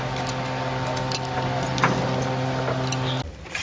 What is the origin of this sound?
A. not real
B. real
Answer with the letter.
B